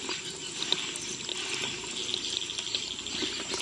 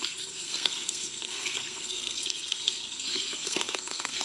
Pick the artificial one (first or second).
second